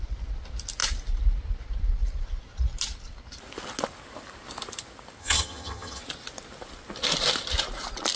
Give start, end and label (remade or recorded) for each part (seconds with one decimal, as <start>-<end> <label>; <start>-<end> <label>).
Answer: 0.0-5.2 recorded; 5.2-6.0 remade; 6.0-8.2 recorded